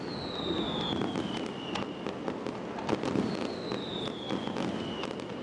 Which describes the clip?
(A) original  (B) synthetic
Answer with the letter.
A